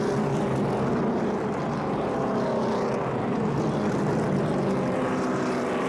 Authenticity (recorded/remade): recorded